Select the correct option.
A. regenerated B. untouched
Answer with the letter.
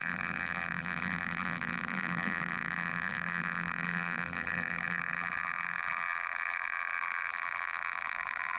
A